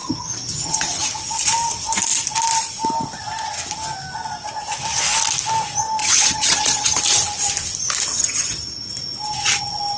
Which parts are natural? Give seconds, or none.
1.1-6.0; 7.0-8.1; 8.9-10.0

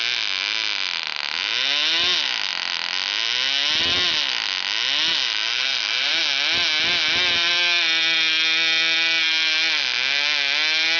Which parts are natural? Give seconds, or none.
0.0-5.1; 6.2-11.0